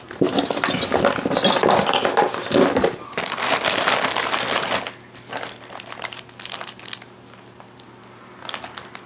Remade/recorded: recorded